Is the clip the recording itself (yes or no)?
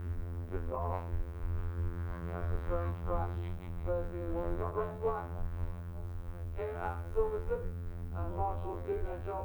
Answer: no